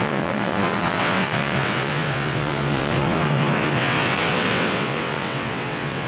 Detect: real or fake fake